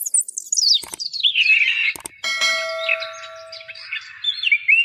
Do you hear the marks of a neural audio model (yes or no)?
no